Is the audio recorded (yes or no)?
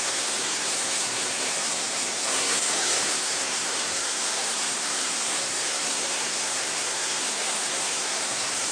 no